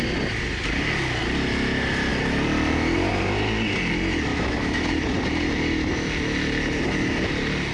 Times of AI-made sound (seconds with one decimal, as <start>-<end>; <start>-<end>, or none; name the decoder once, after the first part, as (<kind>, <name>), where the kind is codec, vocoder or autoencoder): 4.3-4.8 (autoencoder, DAC-VAE)